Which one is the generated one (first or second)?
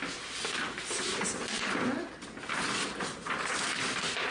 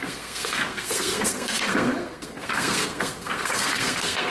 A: second